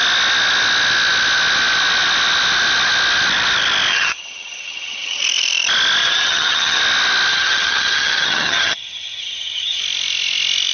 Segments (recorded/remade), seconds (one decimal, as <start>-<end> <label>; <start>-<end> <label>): 0.0-3.9 recorded; 3.9-5.2 remade; 5.2-6.0 recorded; 6.0-6.8 remade; 6.8-7.3 recorded; 7.3-9.8 remade; 9.8-10.7 recorded